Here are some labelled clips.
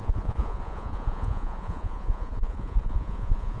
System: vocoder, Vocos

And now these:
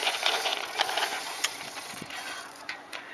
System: vocoder, Vocos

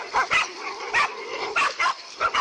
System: none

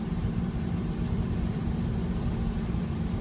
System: vocoder, BigVGAN v2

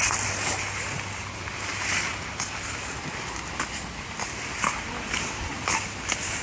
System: none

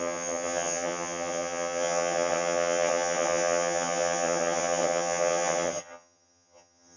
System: vocoder, HiFi-GAN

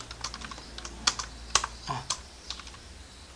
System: none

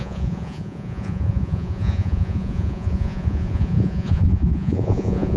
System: vocoder, Vocos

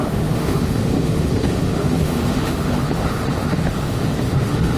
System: autoencoder, DAC-VAE